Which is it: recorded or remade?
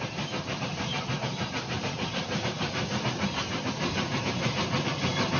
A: remade